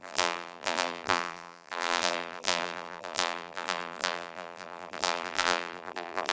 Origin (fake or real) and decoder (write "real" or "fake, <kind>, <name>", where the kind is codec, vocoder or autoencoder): fake, vocoder, BigVGAN v2